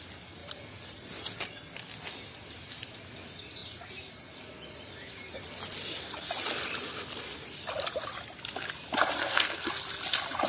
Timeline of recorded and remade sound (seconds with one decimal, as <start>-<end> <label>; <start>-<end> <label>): 0.0-9.2 recorded; 9.2-9.7 remade; 9.7-10.5 recorded